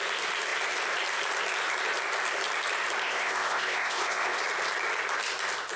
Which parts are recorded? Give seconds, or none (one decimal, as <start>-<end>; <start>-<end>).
0.0-3.0; 4.4-5.8